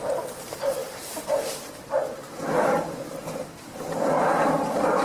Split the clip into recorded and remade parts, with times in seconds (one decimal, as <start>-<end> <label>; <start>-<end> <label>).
0.0-5.0 remade